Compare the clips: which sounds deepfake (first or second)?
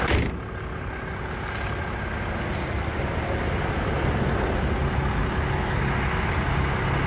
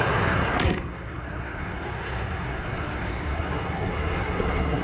second